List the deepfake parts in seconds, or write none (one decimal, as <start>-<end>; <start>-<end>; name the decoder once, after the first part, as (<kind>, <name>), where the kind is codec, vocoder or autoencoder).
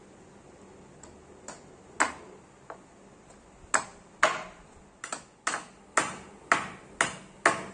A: none